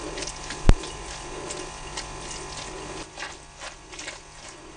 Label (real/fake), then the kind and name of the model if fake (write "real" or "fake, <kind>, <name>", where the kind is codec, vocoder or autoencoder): real